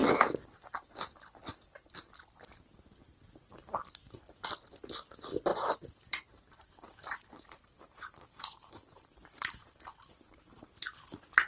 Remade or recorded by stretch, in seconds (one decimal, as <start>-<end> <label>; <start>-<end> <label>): 0.0-5.5 recorded; 5.5-10.4 remade; 10.4-11.5 recorded